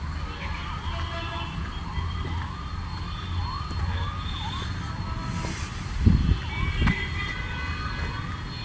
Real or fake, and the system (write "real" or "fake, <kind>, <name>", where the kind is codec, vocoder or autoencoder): real